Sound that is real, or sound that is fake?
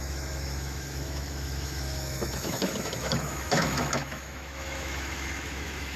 fake